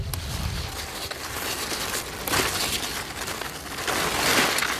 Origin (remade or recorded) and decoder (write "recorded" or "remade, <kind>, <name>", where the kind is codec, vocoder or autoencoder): recorded